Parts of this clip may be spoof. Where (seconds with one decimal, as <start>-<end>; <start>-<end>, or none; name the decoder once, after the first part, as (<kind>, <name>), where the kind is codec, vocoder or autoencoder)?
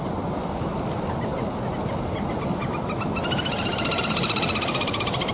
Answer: none